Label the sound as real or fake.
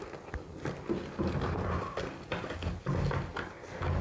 real